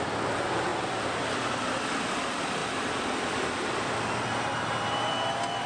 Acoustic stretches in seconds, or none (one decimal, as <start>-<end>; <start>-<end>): 0.0-0.7; 1.8-2.6; 3.9-5.7